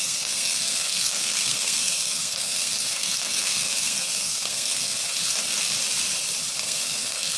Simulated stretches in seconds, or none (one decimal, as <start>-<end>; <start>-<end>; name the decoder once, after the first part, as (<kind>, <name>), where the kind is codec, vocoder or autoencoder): 0.0-5.0 (codec, SNAC); 6.6-7.4